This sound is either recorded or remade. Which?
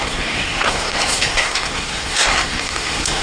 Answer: remade